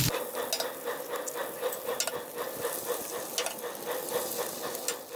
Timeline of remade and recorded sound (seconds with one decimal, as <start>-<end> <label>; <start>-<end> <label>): 0.0-5.2 recorded